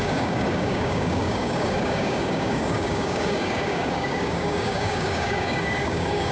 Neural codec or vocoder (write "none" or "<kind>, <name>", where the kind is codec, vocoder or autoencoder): codec, DAC